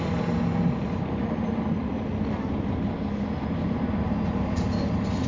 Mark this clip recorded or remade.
recorded